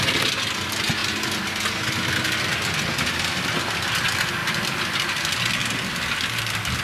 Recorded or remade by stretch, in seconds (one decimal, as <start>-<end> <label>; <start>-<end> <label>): 0.0-6.8 recorded